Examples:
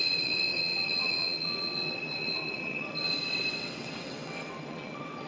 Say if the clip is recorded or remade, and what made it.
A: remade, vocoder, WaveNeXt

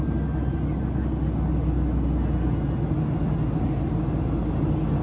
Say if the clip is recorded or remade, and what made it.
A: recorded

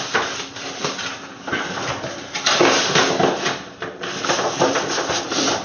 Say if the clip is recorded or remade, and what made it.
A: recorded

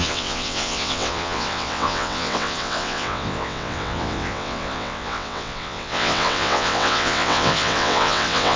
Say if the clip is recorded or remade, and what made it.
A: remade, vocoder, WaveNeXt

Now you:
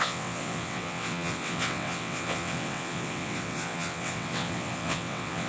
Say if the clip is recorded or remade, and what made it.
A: remade, vocoder, WaveNeXt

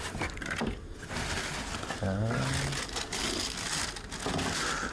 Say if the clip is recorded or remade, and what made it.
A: recorded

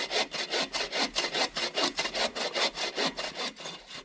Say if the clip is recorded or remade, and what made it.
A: recorded